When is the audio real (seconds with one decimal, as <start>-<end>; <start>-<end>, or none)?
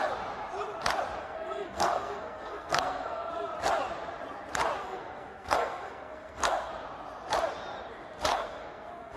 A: 0.0-1.2; 3.3-4.8; 6.7-8.3